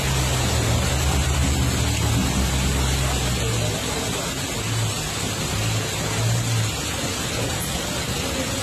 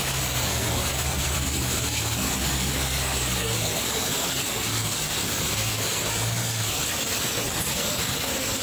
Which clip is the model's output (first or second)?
second